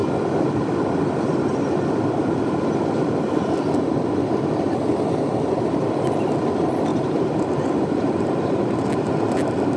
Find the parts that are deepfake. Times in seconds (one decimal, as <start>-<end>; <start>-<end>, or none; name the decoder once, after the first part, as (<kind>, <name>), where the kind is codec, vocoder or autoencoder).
6.9-7.8 (vocoder, BigVGAN v2)